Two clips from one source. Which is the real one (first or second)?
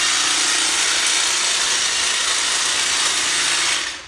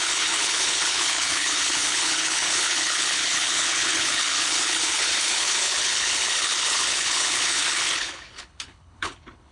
first